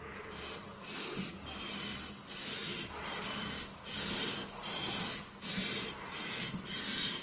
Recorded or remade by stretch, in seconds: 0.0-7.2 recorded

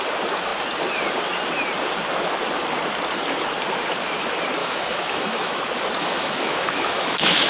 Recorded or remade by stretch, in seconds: 0.0-4.6 recorded; 4.6-5.6 remade; 5.6-6.0 recorded; 6.0-7.5 remade

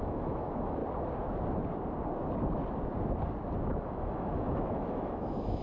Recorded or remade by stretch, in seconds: 0.0-0.8 remade; 0.8-3.8 recorded; 3.8-5.6 remade